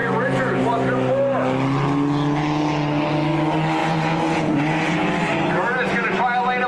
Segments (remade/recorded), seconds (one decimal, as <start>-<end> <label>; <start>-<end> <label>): 0.0-0.6 remade; 0.6-3.8 recorded; 3.8-5.0 remade; 5.0-6.7 recorded